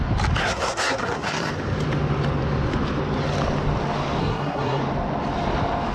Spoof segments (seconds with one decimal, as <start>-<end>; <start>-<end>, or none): 0.4-1.5; 4.2-4.8